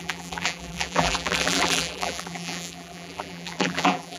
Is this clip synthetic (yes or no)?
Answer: yes